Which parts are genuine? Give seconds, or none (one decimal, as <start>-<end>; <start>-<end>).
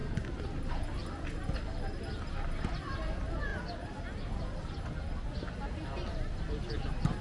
0.0-7.2